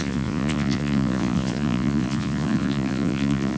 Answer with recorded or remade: remade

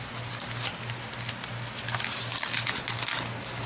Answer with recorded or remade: recorded